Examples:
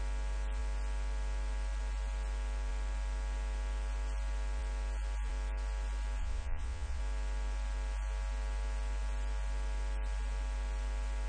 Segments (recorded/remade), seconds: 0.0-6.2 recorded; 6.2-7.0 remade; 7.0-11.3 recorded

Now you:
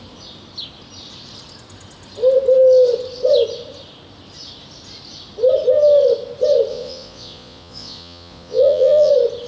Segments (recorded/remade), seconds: 0.0-6.7 recorded; 6.7-9.1 remade; 9.1-9.5 recorded

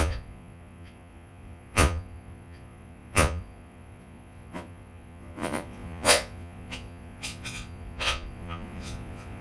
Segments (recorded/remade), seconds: 0.0-9.4 remade

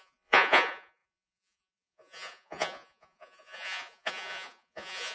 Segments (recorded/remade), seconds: 0.0-5.1 remade